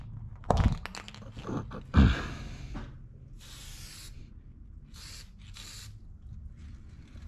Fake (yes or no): no